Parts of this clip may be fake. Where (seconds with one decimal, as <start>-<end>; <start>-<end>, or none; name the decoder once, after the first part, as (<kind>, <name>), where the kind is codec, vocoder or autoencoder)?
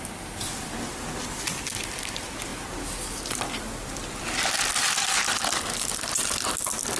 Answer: none